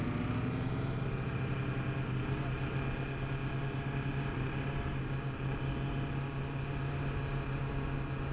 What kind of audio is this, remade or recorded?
recorded